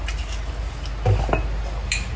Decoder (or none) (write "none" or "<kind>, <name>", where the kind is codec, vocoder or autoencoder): none